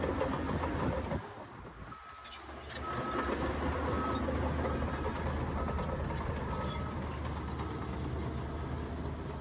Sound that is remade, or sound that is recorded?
recorded